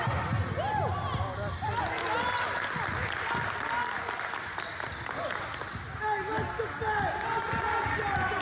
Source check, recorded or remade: recorded